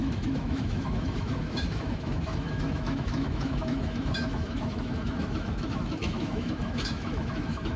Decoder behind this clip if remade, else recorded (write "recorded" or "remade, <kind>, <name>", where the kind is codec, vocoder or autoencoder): remade, autoencoder, DAC-VAE